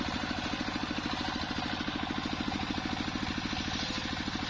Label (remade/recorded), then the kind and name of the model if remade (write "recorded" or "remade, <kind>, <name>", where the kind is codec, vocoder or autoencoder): recorded